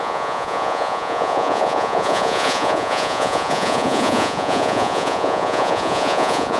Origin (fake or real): fake